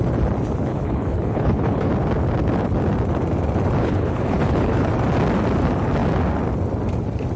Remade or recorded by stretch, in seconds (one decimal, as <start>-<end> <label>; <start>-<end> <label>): 0.0-0.7 recorded; 0.7-1.9 remade; 1.9-3.8 recorded; 3.8-4.9 remade; 4.9-7.4 recorded